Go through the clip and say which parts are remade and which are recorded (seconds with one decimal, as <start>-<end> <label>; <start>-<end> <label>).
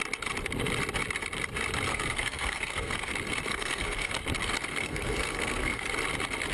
0.0-1.9 recorded; 1.9-3.1 remade; 3.1-3.5 recorded; 3.5-4.1 remade; 4.1-4.7 recorded; 4.7-5.8 remade; 5.8-6.5 recorded